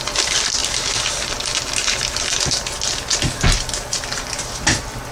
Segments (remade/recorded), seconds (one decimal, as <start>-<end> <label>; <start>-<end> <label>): 0.0-5.1 recorded